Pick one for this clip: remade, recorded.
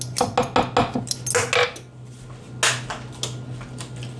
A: recorded